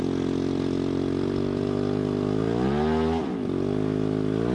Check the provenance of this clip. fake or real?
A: real